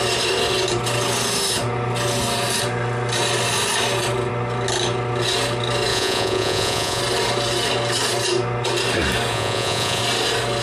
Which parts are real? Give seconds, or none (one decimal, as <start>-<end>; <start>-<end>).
0.0-5.9; 7.0-9.3; 10.0-10.6